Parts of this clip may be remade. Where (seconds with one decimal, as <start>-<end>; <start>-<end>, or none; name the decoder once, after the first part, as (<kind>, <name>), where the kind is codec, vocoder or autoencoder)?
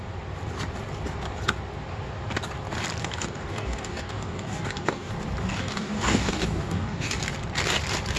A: 3.0-5.1 (codec, DAC); 5.5-7.2